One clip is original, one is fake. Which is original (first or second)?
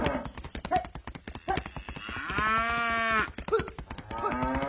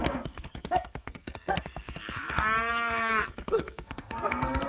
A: first